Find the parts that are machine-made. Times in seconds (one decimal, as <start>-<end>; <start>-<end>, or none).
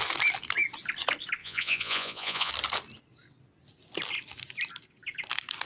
1.4-2.5